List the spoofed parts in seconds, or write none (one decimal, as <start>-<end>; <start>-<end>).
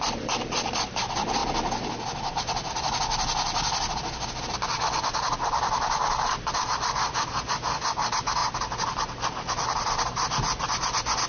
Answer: none